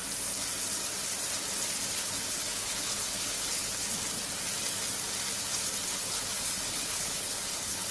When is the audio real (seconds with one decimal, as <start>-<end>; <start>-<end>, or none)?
0.0-1.9; 3.6-5.9